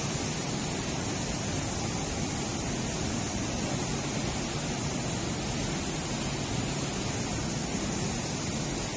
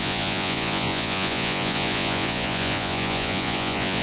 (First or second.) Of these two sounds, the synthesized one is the second